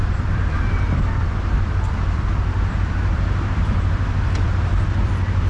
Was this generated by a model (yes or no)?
yes